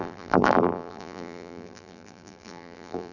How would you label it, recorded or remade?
remade